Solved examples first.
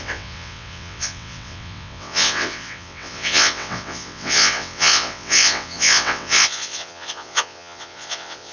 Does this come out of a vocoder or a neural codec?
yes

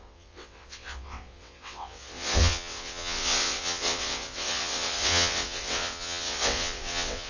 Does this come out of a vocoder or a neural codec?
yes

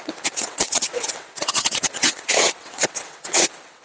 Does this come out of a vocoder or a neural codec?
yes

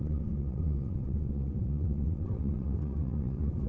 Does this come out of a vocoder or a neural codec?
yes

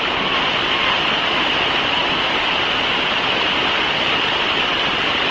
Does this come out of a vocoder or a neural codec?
no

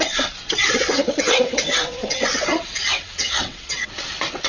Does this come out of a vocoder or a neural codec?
yes